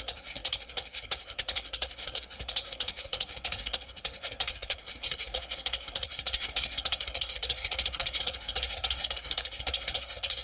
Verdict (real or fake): fake